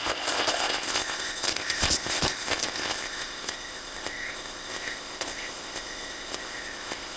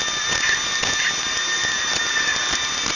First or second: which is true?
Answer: second